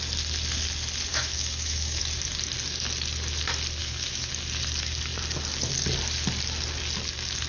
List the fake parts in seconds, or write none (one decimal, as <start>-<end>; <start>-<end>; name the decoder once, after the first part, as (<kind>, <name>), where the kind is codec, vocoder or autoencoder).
1.1-2.0 (autoencoder, DAC-VAE); 3.8-4.3

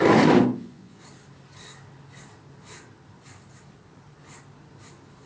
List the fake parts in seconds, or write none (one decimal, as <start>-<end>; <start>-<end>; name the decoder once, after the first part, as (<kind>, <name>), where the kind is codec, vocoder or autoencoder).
0.5-1.0 (vocoder, Vocos)

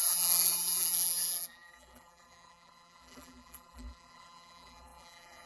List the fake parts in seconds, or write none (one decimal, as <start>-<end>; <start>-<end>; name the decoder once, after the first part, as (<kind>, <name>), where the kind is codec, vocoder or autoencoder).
0.0-5.5 (vocoder, BigVGAN v2)